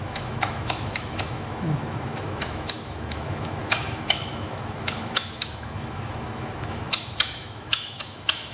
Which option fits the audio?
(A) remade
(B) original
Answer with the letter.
A